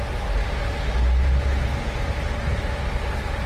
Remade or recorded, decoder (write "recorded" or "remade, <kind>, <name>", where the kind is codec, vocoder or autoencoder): recorded